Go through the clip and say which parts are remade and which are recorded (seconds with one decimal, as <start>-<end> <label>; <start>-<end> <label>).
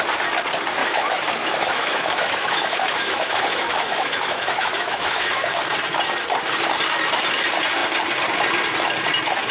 0.0-0.8 recorded; 0.8-5.6 remade; 5.6-9.5 recorded